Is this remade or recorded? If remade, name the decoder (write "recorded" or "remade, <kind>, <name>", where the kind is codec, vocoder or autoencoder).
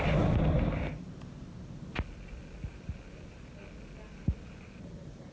recorded